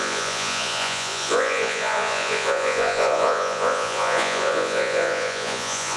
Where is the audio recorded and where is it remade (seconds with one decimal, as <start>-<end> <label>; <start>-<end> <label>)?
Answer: 0.0-6.0 remade

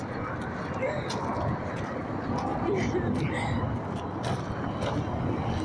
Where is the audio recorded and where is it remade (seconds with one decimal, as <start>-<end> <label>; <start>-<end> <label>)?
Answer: 0.0-5.6 recorded